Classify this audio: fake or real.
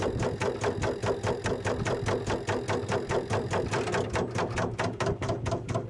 real